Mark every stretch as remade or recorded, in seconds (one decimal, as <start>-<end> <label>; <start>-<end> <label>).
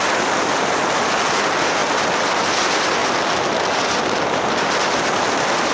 0.0-5.7 recorded